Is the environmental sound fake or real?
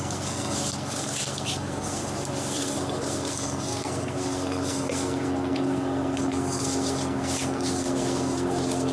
fake